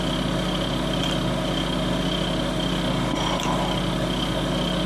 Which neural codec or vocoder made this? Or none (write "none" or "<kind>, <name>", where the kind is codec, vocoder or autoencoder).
none